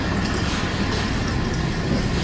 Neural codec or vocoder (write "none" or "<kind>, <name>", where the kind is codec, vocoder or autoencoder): none